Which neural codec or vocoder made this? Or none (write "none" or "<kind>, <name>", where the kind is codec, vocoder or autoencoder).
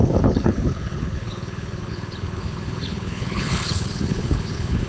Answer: codec, HILCodec